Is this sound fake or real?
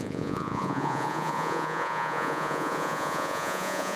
fake